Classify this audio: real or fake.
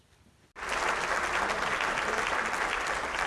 real